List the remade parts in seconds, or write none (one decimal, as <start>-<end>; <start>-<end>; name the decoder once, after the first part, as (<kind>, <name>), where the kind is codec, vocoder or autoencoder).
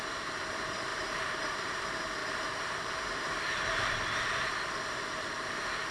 0.9-1.8 (vocoder, BigVGAN v2); 2.2-5.9